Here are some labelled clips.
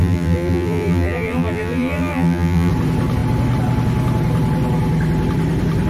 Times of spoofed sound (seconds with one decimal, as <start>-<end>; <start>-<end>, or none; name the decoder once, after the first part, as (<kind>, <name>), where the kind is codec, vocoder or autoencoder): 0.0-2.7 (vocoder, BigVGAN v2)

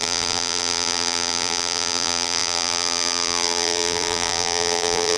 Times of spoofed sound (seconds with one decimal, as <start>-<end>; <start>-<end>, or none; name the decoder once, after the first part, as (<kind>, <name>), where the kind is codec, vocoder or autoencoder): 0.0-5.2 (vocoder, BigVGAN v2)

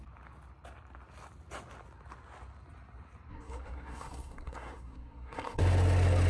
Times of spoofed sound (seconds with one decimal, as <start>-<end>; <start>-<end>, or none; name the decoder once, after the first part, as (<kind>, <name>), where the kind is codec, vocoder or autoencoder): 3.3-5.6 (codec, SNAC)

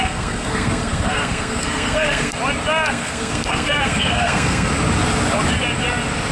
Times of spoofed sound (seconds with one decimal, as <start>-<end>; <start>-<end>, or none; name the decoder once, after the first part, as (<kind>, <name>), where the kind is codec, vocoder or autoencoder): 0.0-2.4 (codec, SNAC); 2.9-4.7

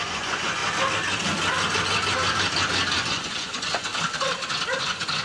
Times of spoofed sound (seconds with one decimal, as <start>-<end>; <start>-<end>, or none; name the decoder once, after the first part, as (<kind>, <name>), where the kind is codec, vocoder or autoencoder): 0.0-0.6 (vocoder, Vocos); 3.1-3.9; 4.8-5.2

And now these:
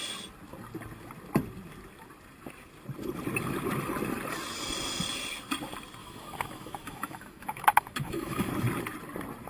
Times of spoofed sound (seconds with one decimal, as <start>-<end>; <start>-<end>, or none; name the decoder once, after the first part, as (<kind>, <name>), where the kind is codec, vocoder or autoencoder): 6.0-8.5 (autoencoder, DAC-VAE)